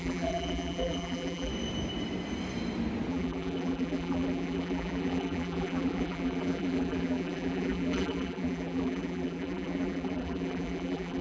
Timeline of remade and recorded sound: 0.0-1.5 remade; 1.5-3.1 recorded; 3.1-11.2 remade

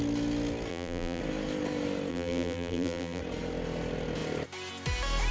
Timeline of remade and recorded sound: 0.0-0.7 recorded; 0.7-1.2 remade; 1.2-2.1 recorded; 2.1-3.2 remade; 3.2-5.3 recorded

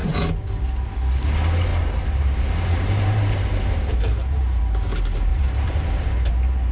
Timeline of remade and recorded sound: 0.0-0.6 remade; 0.6-1.7 recorded; 1.7-4.6 remade; 4.6-5.3 recorded; 5.3-6.3 remade; 6.3-6.7 recorded

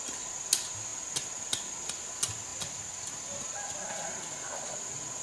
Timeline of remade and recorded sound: 0.0-5.2 recorded

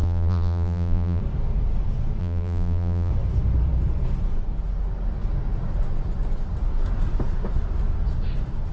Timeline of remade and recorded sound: 0.0-1.2 remade; 1.2-2.2 recorded; 2.2-3.1 remade; 3.1-8.7 recorded

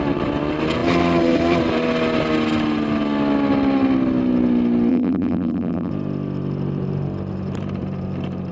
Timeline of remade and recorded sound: 0.0-4.9 recorded; 4.9-5.9 remade; 5.9-8.5 recorded

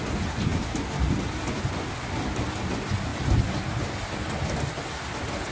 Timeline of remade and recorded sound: 0.0-5.5 recorded